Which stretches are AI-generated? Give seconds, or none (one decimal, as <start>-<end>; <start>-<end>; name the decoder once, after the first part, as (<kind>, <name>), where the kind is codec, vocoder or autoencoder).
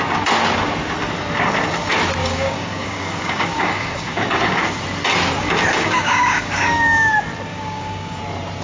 2.2-4.6 (codec, DAC); 5.7-7.1; 7.5-8.2